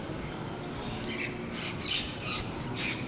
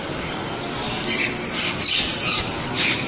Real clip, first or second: first